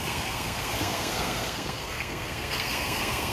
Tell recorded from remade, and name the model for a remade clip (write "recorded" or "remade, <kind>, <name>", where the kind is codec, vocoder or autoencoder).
remade, codec, SNAC